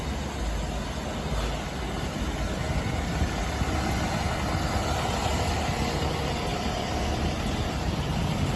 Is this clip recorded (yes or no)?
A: yes